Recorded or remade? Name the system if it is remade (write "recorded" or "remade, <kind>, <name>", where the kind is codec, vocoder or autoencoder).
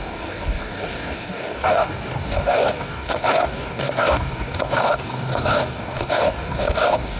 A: remade, codec, DAC